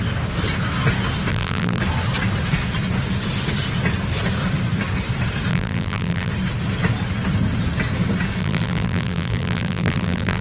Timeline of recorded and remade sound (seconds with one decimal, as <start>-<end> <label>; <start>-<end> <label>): 0.0-1.3 recorded; 1.3-1.8 remade; 1.8-5.5 recorded; 5.5-6.3 remade; 6.3-8.4 recorded; 8.4-10.4 remade